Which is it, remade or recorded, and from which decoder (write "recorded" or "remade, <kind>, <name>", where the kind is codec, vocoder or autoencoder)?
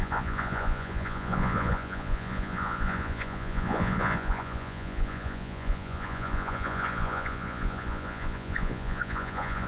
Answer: remade, vocoder, Vocos